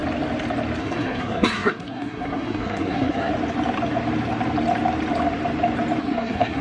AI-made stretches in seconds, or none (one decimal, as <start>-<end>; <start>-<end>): 0.8-3.3; 6.0-6.6